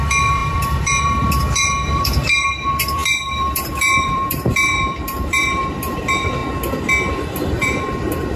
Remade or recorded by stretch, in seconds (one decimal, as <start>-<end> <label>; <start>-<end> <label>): 0.0-6.4 remade; 6.4-7.1 recorded; 7.1-8.4 remade